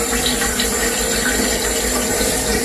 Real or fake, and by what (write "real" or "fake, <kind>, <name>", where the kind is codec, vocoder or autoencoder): real